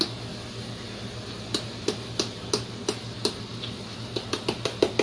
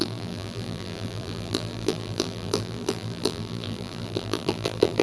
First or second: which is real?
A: first